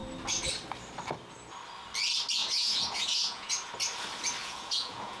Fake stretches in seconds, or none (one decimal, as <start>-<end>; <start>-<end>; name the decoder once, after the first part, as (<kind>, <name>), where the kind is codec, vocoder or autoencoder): 2.4-3.5 (vocoder, Vocos); 4.4-5.2